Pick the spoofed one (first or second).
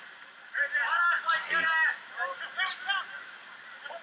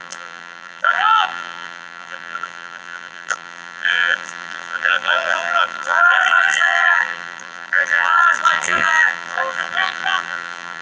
second